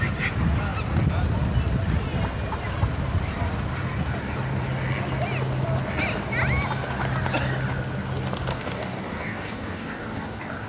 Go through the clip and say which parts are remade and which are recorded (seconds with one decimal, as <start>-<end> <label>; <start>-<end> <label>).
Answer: 0.0-8.5 recorded; 8.5-10.7 remade